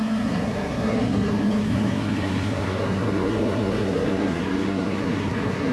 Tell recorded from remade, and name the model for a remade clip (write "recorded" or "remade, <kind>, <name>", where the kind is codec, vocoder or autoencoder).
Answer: remade, codec, SNAC